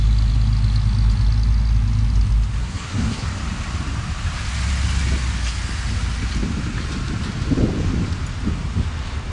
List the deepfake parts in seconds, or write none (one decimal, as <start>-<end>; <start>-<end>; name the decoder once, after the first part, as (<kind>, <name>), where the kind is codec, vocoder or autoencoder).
2.6-3.3 (codec, SNAC)